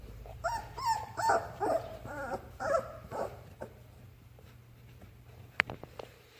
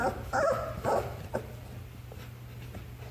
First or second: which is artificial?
first